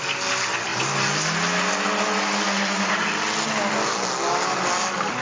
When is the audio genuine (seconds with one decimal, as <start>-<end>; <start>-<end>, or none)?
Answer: 0.0-5.2

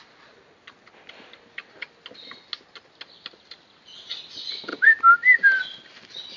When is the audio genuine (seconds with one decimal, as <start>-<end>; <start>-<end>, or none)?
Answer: 0.0-6.4

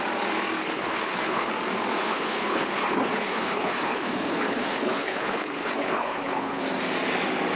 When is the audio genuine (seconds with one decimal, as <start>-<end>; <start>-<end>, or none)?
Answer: 0.0-0.6; 1.5-2.0; 6.6-7.6

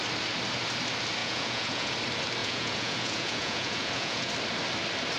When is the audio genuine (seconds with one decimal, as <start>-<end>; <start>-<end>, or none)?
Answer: 0.0-1.2; 1.9-2.4; 4.3-5.2

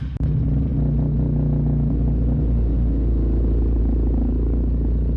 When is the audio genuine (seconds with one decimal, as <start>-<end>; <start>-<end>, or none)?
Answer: 0.0-5.2

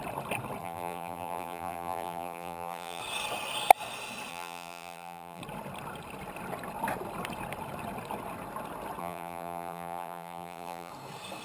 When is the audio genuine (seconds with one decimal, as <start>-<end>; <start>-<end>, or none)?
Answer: 0.0-0.6; 3.0-4.3; 5.4-9.0; 10.9-11.4